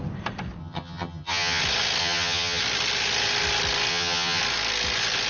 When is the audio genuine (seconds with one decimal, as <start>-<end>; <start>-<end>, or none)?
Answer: 0.0-0.6; 1.6-2.0; 2.6-3.9; 4.4-5.3